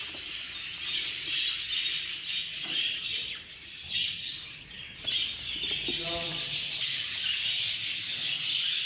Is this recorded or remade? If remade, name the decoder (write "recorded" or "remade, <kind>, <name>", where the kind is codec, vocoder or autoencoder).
remade, vocoder, BigVGAN v2